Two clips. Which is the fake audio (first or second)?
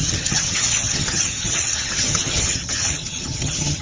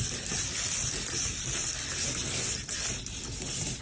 first